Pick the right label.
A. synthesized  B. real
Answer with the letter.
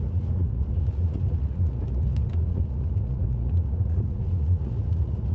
A